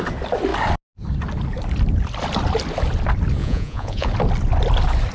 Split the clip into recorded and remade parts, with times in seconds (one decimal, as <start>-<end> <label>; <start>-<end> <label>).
0.0-3.4 recorded; 3.4-4.1 remade; 4.1-5.1 recorded